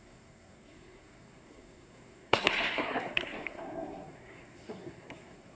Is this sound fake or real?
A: fake